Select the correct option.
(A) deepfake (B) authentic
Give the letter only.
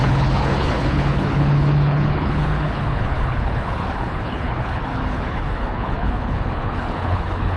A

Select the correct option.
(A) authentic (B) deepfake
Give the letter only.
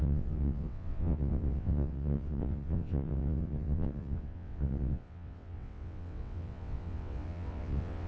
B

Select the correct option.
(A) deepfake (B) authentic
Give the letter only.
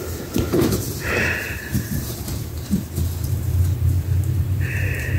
A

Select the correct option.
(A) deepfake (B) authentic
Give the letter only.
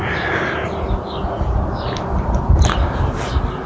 B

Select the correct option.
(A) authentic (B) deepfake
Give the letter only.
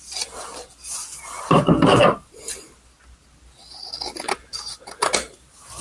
A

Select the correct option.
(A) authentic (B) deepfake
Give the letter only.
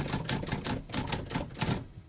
A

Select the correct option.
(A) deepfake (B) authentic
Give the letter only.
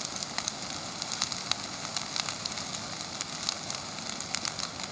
B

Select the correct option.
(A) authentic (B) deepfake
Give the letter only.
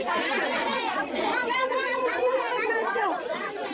B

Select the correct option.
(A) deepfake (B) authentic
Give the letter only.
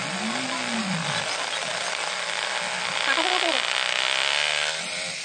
A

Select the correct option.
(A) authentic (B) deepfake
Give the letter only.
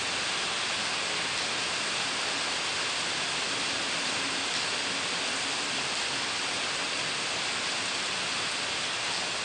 A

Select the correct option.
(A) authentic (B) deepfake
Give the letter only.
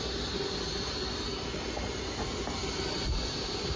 A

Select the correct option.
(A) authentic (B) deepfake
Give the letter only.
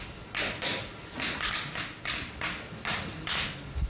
A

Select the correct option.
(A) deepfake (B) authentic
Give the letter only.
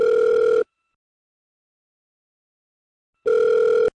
B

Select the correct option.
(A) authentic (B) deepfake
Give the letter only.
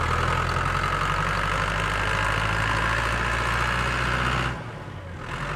A